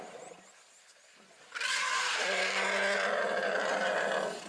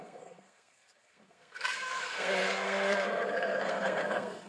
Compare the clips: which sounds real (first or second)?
first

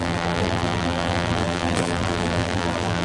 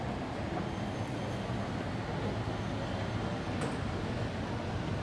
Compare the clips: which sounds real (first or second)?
second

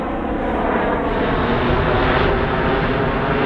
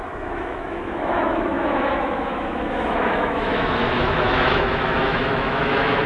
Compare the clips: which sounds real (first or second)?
first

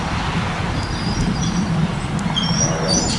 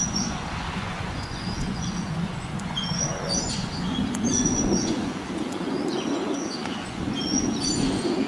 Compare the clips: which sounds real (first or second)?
first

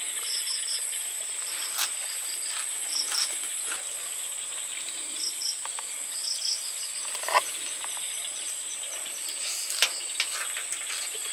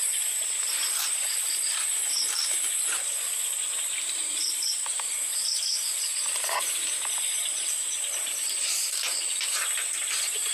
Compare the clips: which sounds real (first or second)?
first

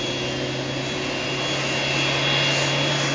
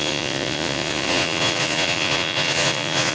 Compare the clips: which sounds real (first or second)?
first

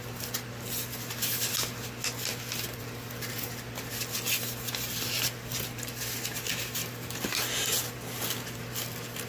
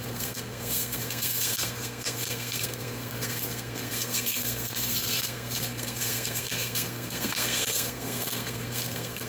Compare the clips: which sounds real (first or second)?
first